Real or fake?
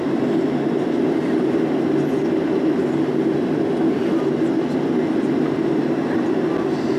real